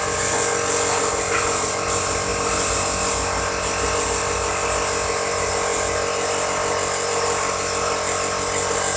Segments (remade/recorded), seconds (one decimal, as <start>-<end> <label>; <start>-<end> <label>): 0.0-9.0 recorded